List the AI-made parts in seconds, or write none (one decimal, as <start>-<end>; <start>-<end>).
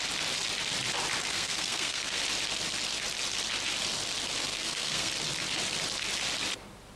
1.3-2.2; 4.5-5.1